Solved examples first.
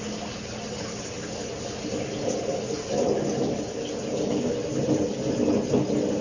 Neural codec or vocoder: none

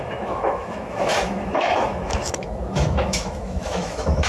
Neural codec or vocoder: autoencoder, DAC-VAE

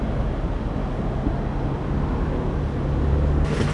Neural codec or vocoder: none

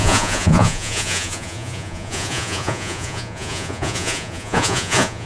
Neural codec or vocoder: vocoder, Vocos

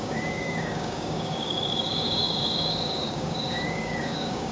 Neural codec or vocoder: codec, DAC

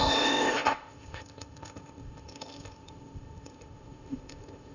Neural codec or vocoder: codec, ZipCodec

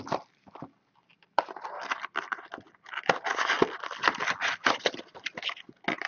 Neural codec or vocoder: none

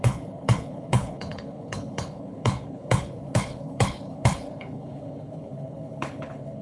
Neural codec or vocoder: codec, HILCodec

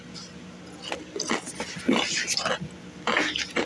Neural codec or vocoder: none